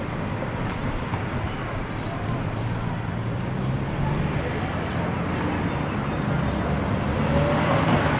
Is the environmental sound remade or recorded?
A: recorded